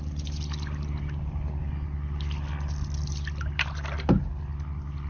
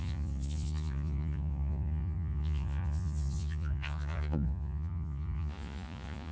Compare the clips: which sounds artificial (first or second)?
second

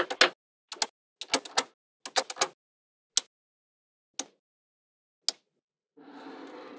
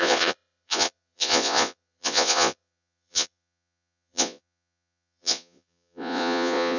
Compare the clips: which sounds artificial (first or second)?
second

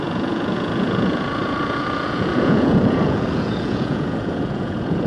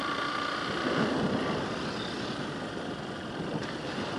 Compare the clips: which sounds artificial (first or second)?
first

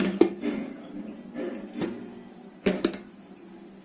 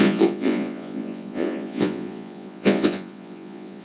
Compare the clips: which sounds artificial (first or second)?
second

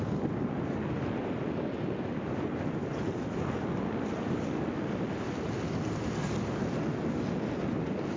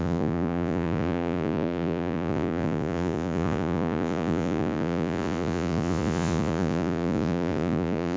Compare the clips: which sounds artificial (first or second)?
second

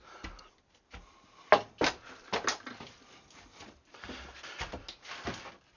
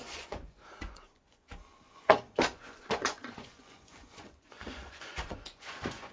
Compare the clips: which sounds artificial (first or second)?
second